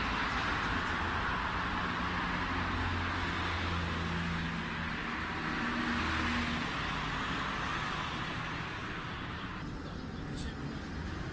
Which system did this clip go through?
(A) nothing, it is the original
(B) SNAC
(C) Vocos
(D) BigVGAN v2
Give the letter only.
A